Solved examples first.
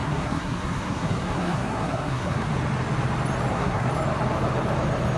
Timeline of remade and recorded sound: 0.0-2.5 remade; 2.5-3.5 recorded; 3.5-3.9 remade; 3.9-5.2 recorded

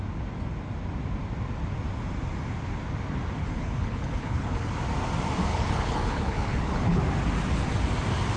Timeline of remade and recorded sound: 0.0-3.4 recorded; 3.4-4.7 remade; 4.7-5.5 recorded; 5.5-7.0 remade; 7.0-8.4 recorded

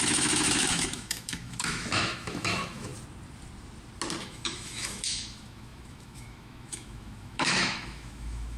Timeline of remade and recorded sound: 0.0-2.9 remade; 2.9-4.2 recorded; 4.2-8.6 remade

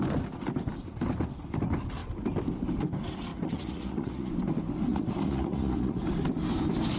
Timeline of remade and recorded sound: 0.0-3.3 recorded; 3.3-4.3 remade; 4.3-4.9 recorded; 4.9-6.0 remade; 6.0-7.0 recorded

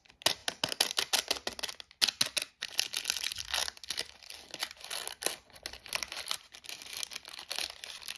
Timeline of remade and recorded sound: 0.0-8.2 recorded

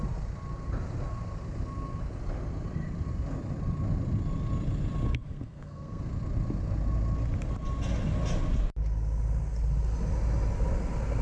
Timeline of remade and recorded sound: 0.0-5.1 recorded; 5.1-6.0 remade; 6.0-11.2 recorded

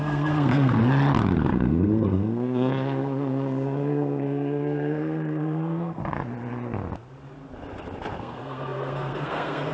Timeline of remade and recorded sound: 0.0-0.8 remade; 0.8-1.4 recorded; 1.4-6.0 remade; 6.0-8.2 recorded; 8.2-9.7 remade